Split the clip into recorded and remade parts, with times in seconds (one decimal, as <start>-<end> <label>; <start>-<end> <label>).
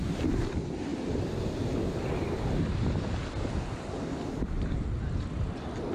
0.0-5.9 recorded